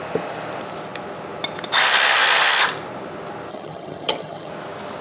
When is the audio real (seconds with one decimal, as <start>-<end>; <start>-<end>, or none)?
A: 0.0-3.5; 4.5-5.0